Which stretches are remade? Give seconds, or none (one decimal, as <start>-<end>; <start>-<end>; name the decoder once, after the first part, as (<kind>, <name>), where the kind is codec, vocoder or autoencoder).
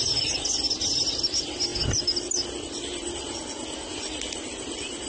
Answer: none